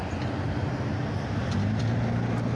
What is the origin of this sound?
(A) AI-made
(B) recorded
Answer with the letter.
B